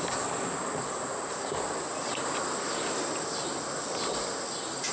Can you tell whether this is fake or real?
real